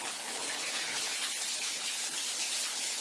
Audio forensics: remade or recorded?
remade